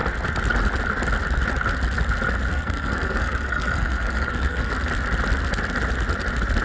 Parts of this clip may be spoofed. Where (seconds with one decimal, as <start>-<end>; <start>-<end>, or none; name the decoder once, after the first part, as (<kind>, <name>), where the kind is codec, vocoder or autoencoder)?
2.5-4.7 (codec, SNAC)